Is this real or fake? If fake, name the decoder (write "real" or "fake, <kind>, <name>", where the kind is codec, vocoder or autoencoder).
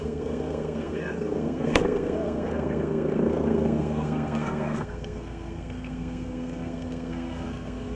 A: fake, codec, SNAC